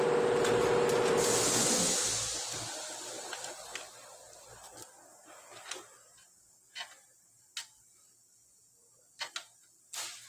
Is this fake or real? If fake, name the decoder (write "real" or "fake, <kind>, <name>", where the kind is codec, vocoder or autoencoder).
real